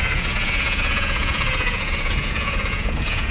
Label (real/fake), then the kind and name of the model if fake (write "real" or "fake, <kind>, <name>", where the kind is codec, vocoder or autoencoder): fake, vocoder, Vocos